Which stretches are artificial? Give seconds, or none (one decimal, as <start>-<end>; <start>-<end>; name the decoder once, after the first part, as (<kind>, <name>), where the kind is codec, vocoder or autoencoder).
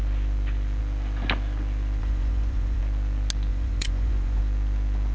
2.0-2.8 (vocoder, Vocos); 3.5-4.4